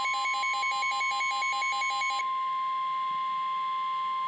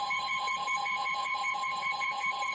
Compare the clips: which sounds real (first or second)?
first